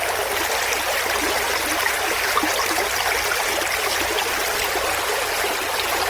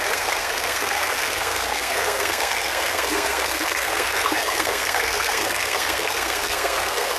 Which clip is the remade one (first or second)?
second